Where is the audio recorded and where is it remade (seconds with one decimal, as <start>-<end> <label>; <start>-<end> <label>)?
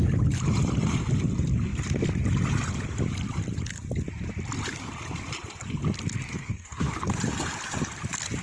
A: 0.0-6.3 recorded; 6.3-6.9 remade; 6.9-8.4 recorded